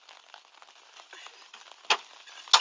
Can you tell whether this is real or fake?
real